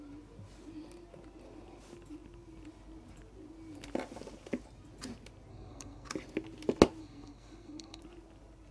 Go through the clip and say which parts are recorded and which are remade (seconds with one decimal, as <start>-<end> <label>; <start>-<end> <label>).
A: 0.0-5.5 recorded; 5.5-6.1 remade; 6.1-7.0 recorded; 7.0-8.0 remade; 8.0-8.7 recorded